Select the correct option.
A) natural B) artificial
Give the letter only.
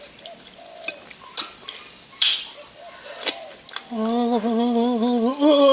A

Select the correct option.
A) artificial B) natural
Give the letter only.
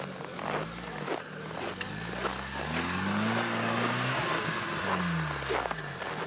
B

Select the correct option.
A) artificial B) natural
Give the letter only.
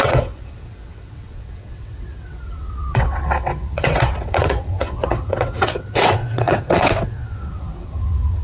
A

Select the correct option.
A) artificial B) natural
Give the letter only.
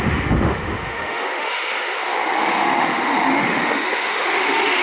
A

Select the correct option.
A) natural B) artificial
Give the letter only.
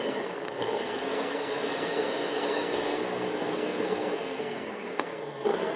B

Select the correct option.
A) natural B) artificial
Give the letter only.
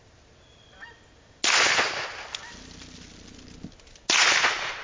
A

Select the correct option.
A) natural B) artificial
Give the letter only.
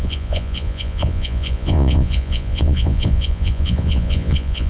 B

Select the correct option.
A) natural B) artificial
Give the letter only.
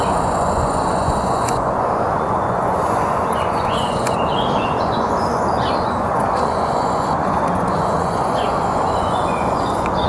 B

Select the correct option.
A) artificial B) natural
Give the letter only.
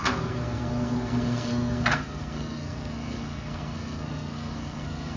A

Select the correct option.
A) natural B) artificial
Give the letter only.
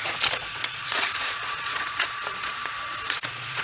B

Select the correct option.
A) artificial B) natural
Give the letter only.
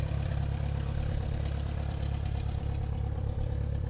A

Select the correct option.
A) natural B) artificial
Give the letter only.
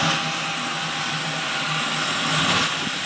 A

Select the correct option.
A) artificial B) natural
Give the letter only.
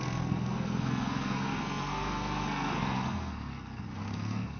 A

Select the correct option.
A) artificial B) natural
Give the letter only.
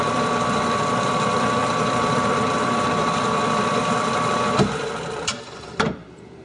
A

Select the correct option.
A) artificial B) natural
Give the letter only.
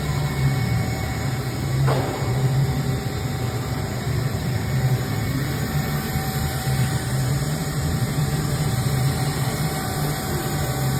A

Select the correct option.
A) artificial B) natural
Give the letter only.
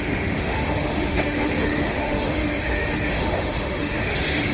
A